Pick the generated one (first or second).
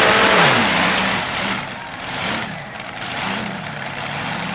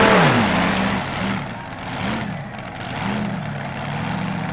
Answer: first